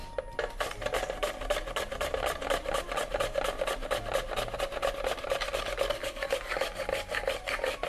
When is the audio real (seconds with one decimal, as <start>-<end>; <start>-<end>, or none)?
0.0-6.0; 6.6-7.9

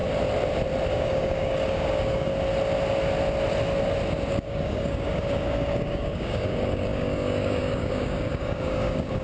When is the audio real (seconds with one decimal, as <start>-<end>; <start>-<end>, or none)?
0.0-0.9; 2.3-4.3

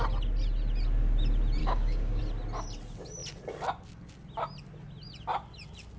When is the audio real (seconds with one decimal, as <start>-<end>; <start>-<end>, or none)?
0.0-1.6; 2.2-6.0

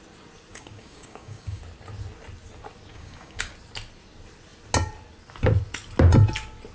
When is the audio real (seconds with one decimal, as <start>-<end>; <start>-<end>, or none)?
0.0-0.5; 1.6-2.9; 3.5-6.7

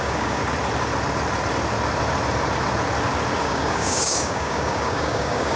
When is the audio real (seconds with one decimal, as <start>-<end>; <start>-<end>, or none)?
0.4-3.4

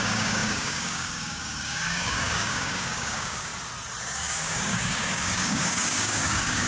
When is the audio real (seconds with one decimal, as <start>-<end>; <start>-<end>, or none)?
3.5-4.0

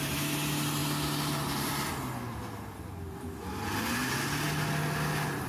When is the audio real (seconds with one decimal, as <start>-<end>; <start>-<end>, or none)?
0.0-5.5